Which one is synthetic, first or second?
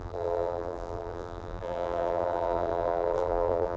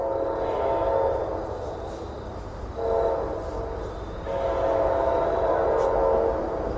first